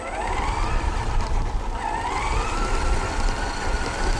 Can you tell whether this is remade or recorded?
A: recorded